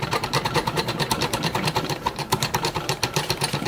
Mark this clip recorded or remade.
remade